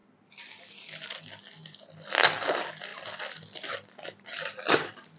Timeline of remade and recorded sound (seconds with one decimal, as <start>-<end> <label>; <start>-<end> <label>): 0.0-5.2 recorded